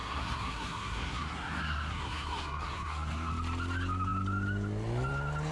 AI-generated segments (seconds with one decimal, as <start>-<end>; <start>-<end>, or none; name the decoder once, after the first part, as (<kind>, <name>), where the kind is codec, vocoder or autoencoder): 0.0-3.3 (codec, SNAC)